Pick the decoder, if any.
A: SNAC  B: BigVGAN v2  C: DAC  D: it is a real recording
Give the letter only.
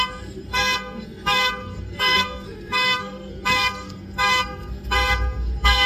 A